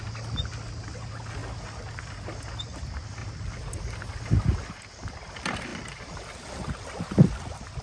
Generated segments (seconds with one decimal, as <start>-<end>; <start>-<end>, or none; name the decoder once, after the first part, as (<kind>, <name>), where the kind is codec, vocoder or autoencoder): 3.2-3.8 (vocoder, BigVGAN v2); 5.7-7.8